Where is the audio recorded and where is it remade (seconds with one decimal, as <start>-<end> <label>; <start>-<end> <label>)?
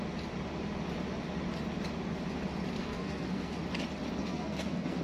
0.0-2.8 recorded; 2.8-3.6 remade; 3.6-4.2 recorded; 4.2-5.0 remade